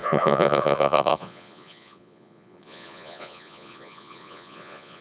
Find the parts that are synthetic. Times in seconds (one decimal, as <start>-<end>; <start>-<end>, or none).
0.0-5.0